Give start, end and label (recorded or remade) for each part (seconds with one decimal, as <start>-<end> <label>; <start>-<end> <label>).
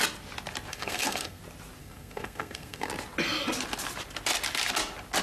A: 0.0-0.7 recorded; 0.7-1.4 remade; 1.4-1.8 recorded; 1.8-2.9 remade; 2.9-5.2 recorded